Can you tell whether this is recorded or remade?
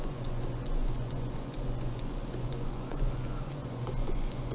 remade